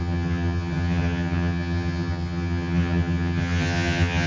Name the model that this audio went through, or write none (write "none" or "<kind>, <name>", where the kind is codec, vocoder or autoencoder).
vocoder, HiFi-GAN